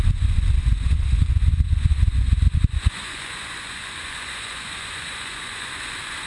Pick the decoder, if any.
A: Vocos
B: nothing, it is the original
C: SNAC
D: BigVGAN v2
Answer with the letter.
A